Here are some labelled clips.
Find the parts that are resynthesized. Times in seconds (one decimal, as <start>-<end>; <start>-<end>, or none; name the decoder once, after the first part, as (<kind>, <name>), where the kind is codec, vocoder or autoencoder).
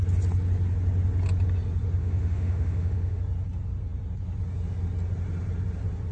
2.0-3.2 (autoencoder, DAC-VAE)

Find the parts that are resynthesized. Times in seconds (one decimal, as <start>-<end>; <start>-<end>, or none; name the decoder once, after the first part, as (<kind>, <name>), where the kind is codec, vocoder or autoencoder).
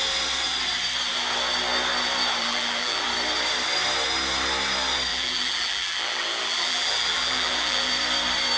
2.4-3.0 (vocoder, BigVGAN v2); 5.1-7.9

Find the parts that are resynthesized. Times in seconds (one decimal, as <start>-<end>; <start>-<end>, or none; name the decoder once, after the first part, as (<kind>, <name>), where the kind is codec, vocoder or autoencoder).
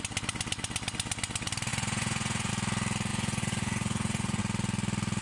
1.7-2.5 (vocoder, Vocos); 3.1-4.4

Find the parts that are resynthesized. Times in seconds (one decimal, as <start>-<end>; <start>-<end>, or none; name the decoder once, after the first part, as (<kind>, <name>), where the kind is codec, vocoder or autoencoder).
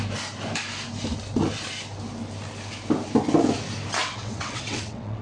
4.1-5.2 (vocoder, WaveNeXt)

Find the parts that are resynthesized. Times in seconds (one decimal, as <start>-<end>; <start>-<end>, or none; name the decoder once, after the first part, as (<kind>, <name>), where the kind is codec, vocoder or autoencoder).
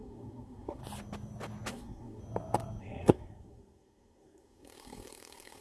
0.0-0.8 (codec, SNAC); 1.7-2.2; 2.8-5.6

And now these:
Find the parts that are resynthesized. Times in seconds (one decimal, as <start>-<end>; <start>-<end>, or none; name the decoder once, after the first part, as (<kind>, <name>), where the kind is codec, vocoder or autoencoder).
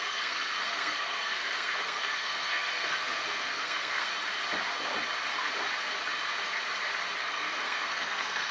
0.0-4.1 (codec, SNAC); 7.2-8.5